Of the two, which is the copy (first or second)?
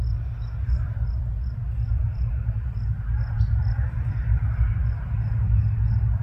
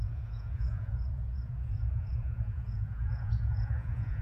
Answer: second